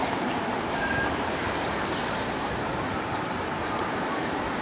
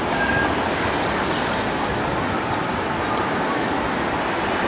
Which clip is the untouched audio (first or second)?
second